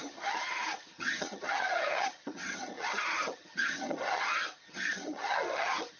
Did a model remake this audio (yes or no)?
yes